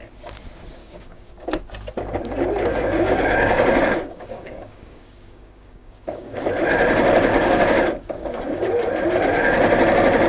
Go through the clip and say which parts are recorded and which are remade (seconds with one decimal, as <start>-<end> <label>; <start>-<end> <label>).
0.0-0.8 recorded; 0.8-1.6 remade; 1.6-2.7 recorded; 2.7-6.4 remade; 6.4-7.3 recorded; 7.3-8.7 remade; 8.7-10.3 recorded